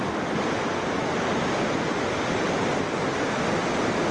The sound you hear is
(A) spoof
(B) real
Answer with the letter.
A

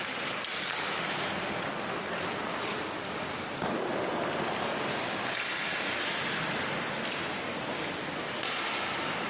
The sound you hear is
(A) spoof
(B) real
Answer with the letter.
B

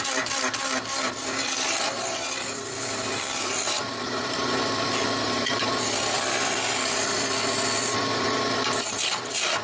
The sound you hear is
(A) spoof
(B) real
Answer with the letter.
A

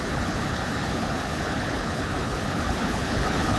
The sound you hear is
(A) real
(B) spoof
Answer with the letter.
B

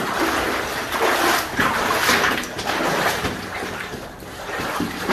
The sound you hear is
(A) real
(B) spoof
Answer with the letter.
A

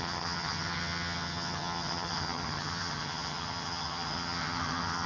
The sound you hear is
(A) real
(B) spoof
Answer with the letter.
B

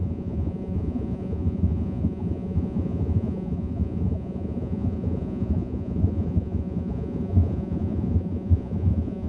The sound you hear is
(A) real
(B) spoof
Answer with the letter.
B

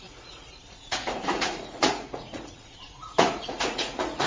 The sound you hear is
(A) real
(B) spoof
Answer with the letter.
B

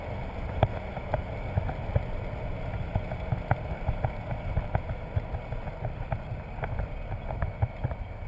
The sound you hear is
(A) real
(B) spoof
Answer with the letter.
A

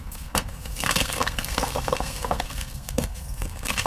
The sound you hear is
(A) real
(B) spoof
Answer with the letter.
B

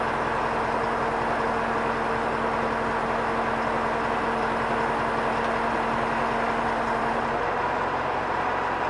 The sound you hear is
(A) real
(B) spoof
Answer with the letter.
A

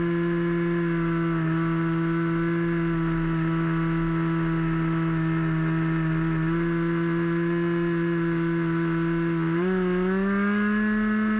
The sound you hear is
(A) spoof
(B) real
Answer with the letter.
B